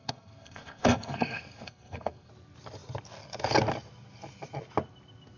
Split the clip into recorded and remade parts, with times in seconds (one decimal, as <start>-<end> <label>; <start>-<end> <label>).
0.0-2.3 remade; 2.3-5.4 recorded

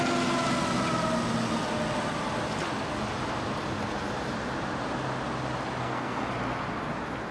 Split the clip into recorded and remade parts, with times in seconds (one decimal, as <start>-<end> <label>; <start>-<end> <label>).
0.0-5.8 recorded; 5.8-6.3 remade; 6.3-7.3 recorded

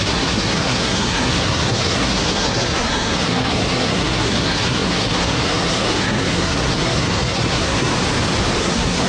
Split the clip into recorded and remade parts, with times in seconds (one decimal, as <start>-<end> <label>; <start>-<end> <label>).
0.0-7.9 remade; 7.9-8.6 recorded; 8.6-9.1 remade

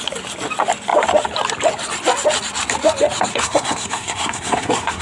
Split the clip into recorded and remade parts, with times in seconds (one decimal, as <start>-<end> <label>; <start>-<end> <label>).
0.0-3.3 recorded; 3.3-5.0 remade

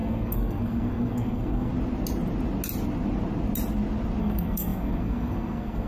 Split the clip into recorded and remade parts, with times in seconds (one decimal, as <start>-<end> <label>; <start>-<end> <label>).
0.0-1.7 remade; 1.7-4.2 recorded; 4.2-5.9 remade